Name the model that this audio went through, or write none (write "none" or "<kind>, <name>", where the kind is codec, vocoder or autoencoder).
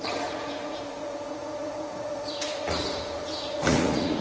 vocoder, Vocos